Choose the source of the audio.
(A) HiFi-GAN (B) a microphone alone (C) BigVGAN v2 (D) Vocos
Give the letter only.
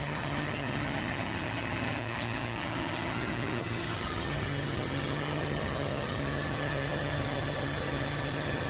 A